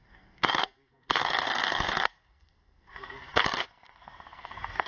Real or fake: fake